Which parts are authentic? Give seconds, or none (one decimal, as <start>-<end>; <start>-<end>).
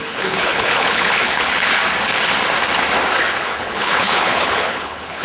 1.8-3.3